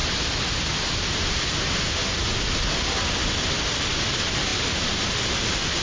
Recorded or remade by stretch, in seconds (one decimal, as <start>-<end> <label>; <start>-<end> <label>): 0.0-5.8 recorded